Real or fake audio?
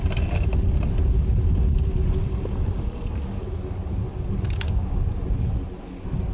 real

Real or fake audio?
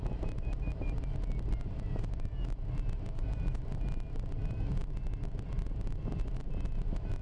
real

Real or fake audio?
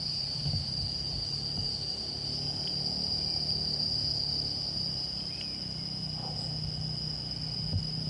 real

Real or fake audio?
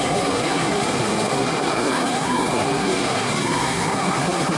fake